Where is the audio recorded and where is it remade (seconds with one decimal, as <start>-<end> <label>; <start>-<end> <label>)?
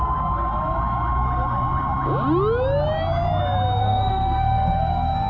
0.0-3.8 recorded; 3.8-5.3 remade